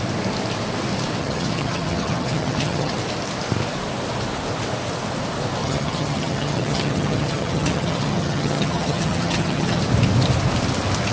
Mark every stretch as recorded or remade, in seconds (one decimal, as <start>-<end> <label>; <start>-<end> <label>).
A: 0.0-1.2 recorded; 1.2-2.9 remade; 2.9-5.6 recorded; 5.6-9.8 remade; 9.8-11.1 recorded